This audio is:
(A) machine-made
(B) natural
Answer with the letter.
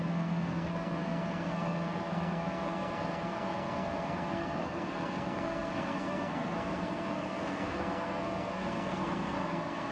A